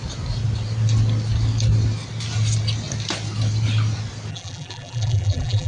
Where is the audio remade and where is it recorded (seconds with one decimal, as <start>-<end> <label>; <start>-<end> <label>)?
0.0-4.3 recorded; 4.3-5.7 remade